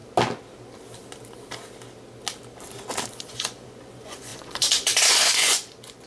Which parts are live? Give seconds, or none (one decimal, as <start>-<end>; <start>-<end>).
0.0-3.1